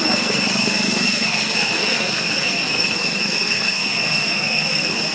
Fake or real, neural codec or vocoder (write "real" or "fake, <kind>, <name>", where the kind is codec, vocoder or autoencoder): fake, codec, SNAC